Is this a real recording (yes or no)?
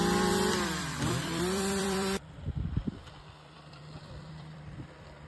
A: no